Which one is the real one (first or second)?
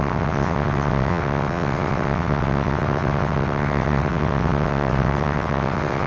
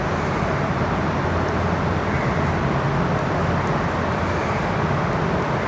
second